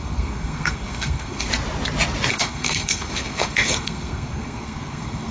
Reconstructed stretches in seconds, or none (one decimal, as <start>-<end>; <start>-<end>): 0.0-1.5; 2.3-5.3